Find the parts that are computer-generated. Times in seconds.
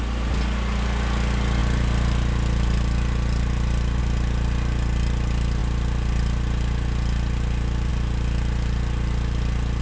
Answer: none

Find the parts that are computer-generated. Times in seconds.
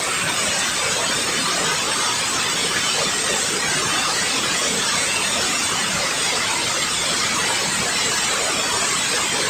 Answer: 2.6-3.1 (vocoder, Vocos); 3.8-6.5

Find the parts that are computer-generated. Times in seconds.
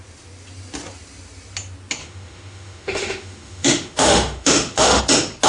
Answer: 2.0-5.0 (autoencoder, DAC-VAE)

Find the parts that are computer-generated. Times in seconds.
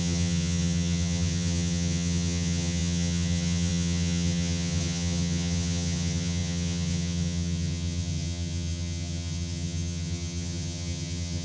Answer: 0.0-11.4 (vocoder, HiFi-GAN)